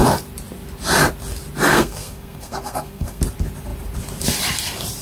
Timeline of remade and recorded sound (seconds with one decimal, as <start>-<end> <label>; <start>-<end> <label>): 0.0-1.7 recorded; 1.7-3.2 remade; 3.2-5.0 recorded